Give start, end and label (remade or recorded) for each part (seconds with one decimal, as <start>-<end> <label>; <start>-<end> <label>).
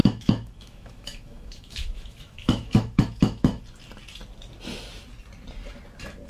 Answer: 0.0-3.6 remade; 3.6-6.3 recorded